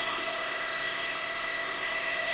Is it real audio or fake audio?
fake